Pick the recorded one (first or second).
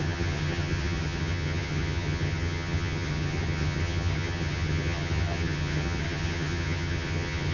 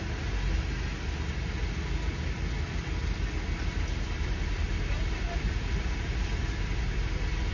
second